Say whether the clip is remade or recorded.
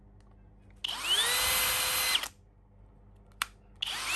recorded